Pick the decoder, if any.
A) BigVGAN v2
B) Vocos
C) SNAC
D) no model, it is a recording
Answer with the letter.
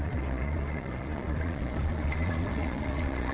B